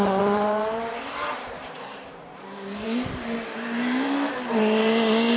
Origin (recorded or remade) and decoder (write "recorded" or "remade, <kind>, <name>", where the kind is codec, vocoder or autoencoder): remade, vocoder, BigVGAN v2